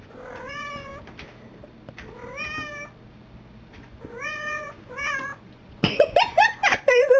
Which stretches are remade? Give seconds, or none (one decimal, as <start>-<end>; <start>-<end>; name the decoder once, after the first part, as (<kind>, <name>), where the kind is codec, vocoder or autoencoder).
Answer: 0.0-0.9 (vocoder, Vocos); 3.7-7.2